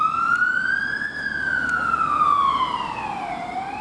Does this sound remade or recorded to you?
recorded